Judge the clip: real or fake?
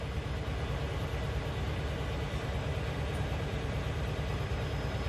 real